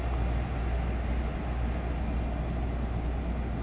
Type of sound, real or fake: real